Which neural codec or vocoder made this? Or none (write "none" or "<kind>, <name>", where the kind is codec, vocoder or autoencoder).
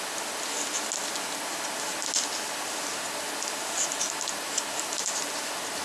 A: none